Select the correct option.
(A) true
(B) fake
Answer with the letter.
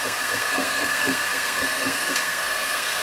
B